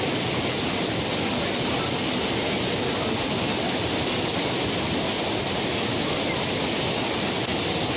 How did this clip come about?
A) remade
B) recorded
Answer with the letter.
B